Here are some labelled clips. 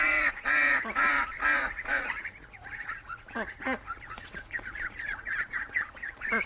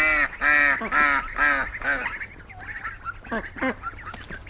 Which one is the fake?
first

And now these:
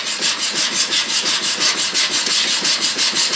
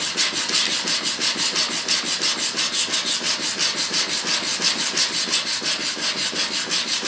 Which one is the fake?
first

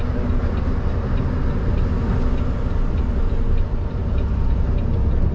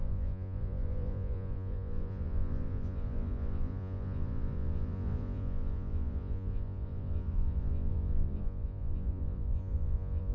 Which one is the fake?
second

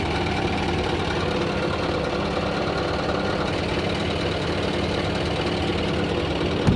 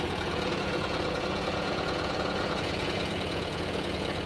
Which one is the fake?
second